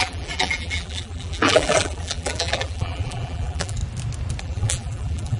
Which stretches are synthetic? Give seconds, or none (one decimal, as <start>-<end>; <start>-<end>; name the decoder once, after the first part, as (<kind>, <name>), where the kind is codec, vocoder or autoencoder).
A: 0.0-3.8 (vocoder, BigVGAN v2); 4.4-5.4